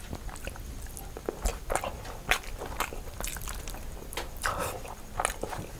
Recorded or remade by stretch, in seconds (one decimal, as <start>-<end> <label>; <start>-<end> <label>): 0.0-1.5 recorded; 1.5-5.0 remade; 5.0-5.8 recorded